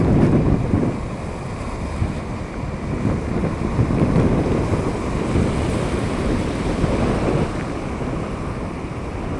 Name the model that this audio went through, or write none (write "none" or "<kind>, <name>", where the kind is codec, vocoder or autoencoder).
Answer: none